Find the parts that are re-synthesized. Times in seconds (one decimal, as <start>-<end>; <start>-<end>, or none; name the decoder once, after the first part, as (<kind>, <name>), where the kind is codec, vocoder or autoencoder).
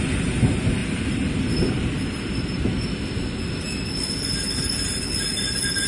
none